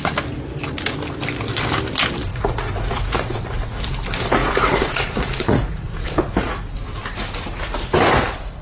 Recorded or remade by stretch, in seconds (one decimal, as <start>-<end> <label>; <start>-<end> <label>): 0.0-2.3 recorded; 2.3-3.8 remade; 3.8-4.4 recorded; 4.4-6.5 remade; 6.5-8.6 recorded